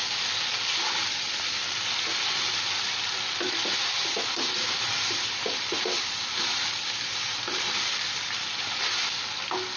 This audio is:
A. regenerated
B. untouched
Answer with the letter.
B